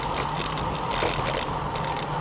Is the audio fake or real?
real